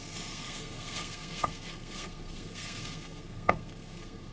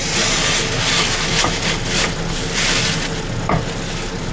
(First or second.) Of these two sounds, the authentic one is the second